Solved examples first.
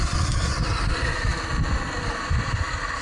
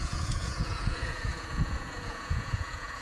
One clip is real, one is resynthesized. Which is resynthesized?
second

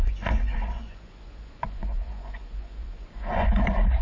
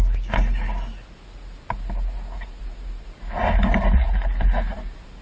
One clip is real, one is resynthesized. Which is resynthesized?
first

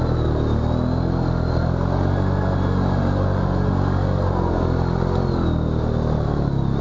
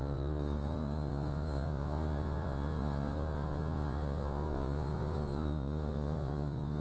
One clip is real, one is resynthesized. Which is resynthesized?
second